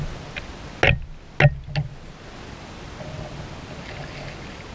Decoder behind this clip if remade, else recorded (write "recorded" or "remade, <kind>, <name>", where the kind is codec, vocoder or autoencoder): recorded